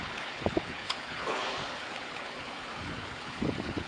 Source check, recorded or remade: remade